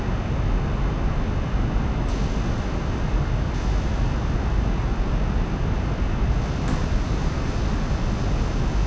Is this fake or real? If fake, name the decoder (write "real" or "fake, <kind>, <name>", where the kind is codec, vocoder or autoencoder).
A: real